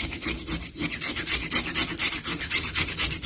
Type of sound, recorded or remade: recorded